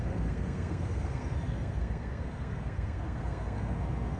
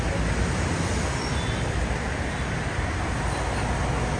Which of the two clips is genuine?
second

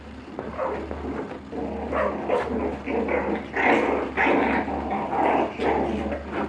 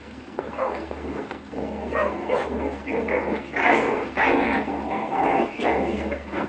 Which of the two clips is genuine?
first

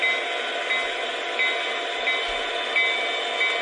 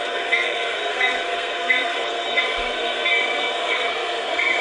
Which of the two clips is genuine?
first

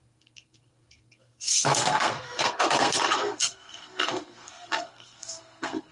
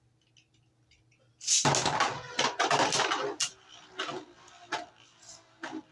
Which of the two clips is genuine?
second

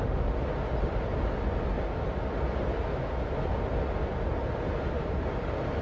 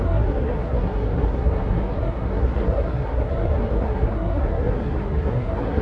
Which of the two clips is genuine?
first